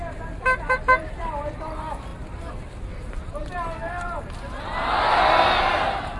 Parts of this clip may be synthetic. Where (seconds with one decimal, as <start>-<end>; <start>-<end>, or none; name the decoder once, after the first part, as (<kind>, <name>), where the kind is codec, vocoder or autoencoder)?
none